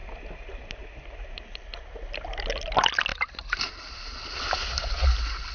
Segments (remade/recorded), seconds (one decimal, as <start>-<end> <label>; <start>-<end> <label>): 0.0-5.5 recorded